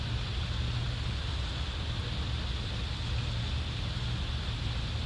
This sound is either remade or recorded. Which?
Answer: recorded